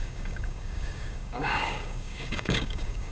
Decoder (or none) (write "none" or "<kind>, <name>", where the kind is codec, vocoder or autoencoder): codec, DAC